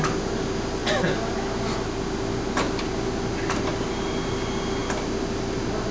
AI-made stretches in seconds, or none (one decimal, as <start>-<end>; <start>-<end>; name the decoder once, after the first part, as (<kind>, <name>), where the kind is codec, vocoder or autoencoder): none

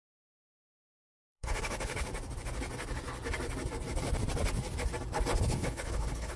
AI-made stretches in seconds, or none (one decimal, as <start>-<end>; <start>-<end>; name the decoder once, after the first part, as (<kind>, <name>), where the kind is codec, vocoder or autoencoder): 0.0-2.1 (codec, HILCodec); 5.3-6.4

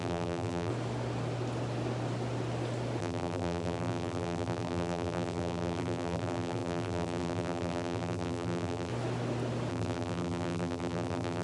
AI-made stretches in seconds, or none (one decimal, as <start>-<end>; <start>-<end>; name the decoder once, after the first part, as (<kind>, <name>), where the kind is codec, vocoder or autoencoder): 0.0-0.7 (vocoder, BigVGAN v2); 3.0-8.9; 9.7-11.4